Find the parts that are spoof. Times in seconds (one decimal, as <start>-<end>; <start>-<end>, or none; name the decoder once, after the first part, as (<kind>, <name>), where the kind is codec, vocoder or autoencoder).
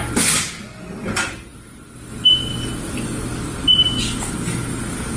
none